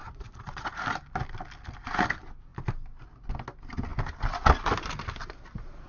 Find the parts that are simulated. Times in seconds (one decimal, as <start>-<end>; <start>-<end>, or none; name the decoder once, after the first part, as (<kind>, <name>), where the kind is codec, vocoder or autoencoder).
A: 0.0-0.7 (vocoder, Vocos)